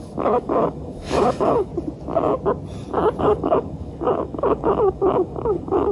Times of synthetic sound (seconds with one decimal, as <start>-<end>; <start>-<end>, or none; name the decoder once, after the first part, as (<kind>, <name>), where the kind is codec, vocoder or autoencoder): 0.0-1.7 (codec, DAC); 3.2-5.9